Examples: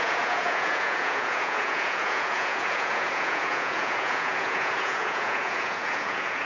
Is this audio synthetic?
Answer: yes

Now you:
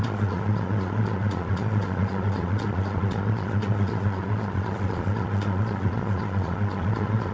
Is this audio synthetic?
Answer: yes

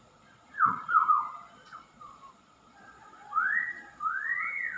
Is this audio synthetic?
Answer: yes